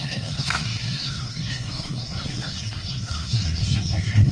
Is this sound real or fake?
fake